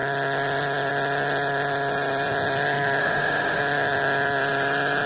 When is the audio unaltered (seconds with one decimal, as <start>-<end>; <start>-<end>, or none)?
0.0-3.0; 3.6-5.1